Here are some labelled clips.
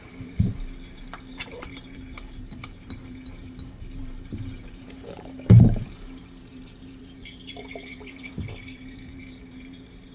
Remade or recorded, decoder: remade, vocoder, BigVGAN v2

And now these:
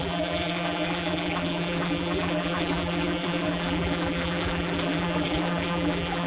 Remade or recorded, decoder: remade, vocoder, BigVGAN v2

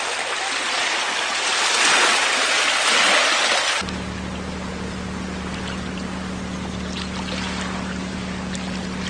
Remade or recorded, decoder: recorded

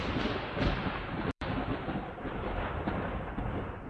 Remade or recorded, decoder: remade, vocoder, BigVGAN v2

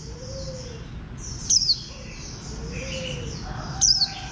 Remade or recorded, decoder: recorded